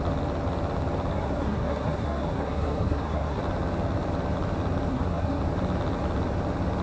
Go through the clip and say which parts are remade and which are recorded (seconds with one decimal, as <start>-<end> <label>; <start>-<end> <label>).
0.0-1.1 recorded; 1.1-3.4 remade; 3.4-4.9 recorded; 4.9-5.4 remade; 5.4-6.8 recorded